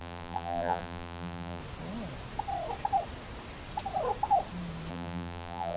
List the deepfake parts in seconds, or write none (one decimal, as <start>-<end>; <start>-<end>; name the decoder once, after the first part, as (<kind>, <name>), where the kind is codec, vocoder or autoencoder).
0.0-1.6 (vocoder, BigVGAN v2); 4.9-5.8